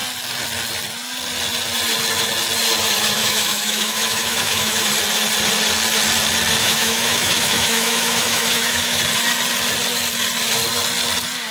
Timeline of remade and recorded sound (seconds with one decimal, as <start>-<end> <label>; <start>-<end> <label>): 0.0-3.2 recorded; 3.2-4.9 remade; 4.9-6.6 recorded; 6.6-9.0 remade; 9.0-11.5 recorded